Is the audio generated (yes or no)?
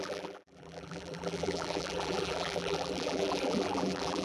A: yes